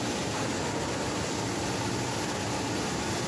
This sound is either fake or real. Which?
real